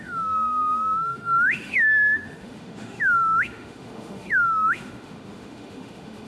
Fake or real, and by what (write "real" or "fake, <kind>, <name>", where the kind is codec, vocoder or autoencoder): fake, autoencoder, DAC-VAE